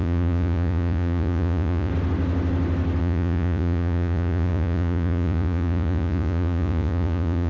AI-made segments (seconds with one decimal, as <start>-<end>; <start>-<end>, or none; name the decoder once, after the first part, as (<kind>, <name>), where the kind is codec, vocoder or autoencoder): 0.0-1.9 (vocoder, Vocos); 3.0-7.5